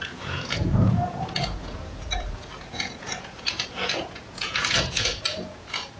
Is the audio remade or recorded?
remade